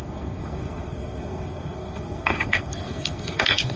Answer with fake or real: fake